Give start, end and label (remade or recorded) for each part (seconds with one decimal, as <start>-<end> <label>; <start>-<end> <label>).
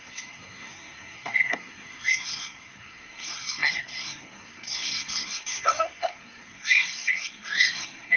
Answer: 0.0-8.2 remade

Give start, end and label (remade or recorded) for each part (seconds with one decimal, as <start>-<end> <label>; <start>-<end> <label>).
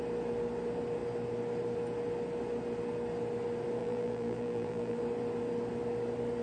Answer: 0.0-3.8 recorded; 3.8-5.0 remade; 5.0-6.4 recorded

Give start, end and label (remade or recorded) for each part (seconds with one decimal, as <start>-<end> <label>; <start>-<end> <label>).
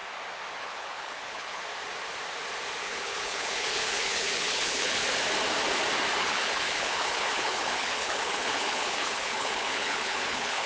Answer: 0.0-0.6 recorded; 0.6-1.6 remade; 1.6-2.8 recorded; 2.8-5.0 remade; 5.0-6.2 recorded; 6.2-10.7 remade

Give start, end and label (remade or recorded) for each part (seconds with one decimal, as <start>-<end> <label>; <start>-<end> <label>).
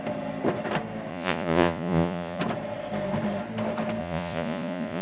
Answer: 0.0-1.1 recorded; 1.1-2.4 remade; 2.4-4.0 recorded; 4.0-5.0 remade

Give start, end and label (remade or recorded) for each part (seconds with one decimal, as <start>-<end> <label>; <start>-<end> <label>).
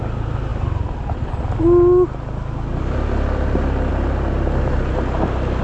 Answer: 0.0-5.6 recorded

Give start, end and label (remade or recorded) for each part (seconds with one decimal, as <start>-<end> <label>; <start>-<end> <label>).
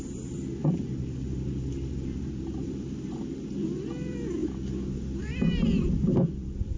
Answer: 0.0-4.4 remade; 4.4-5.2 recorded; 5.2-6.8 remade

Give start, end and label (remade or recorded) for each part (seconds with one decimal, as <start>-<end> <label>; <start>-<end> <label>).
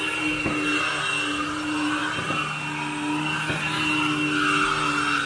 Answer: 0.0-5.3 recorded